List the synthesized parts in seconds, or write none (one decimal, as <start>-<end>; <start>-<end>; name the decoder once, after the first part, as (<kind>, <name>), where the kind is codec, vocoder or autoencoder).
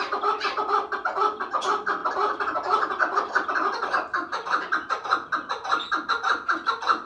2.0-3.0 (vocoder, BigVGAN v2)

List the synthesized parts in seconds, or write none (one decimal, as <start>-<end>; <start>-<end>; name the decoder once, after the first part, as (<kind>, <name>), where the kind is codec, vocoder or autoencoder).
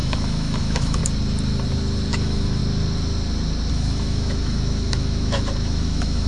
0.0-1.0 (autoencoder, DAC-VAE); 2.1-2.6; 3.7-6.3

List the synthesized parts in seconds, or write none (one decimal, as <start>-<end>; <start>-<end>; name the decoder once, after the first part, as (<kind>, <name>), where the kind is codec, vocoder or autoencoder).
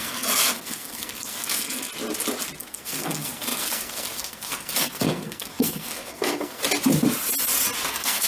0.0-1.9 (codec, SNAC); 2.6-6.6; 7.9-8.3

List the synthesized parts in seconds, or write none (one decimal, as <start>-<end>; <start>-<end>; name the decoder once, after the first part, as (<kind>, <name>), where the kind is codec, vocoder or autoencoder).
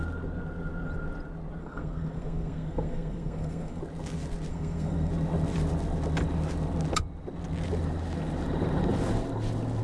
1.6-3.8 (codec, SNAC); 4.5-5.1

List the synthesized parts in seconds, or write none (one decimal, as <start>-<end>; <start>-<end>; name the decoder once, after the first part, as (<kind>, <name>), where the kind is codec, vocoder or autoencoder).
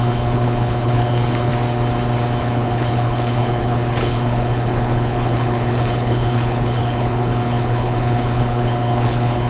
0.0-1.5 (codec, HILCodec); 2.4-9.5